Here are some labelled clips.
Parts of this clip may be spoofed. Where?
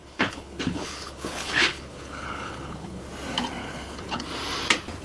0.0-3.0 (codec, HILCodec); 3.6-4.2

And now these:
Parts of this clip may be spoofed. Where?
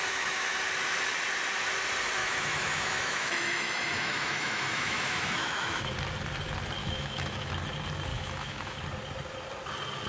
0.0-0.6 (autoencoder, DAC-VAE); 2.2-5.9; 6.8-7.5; 8.1-8.8